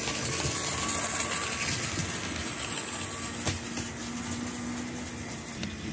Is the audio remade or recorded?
recorded